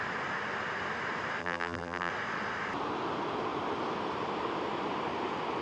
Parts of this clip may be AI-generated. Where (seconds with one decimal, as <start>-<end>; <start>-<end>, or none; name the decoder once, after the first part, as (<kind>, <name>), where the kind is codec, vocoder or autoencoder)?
1.4-2.1 (vocoder, BigVGAN v2)

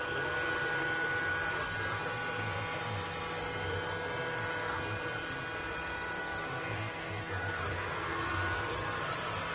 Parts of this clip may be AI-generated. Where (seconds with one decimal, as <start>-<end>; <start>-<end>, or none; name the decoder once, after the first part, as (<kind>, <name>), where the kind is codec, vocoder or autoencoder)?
6.2-7.6 (codec, SNAC)